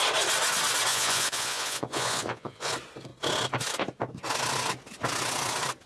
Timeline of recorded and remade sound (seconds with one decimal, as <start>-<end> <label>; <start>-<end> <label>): 0.0-0.9 recorded; 0.9-2.7 remade; 2.7-5.9 recorded